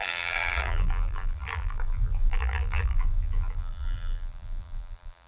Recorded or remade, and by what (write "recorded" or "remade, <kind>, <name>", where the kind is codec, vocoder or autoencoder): remade, vocoder, BigVGAN v2